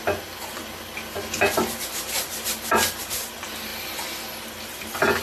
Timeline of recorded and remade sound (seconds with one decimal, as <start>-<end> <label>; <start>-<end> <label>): 0.0-5.2 recorded